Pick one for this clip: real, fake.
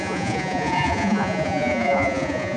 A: fake